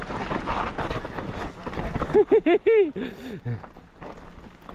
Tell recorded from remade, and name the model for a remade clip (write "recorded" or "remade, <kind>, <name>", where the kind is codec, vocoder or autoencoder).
recorded